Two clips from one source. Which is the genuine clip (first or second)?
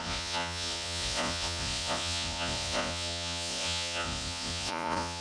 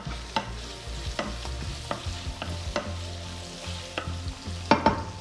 second